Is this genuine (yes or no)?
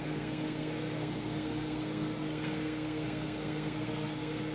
no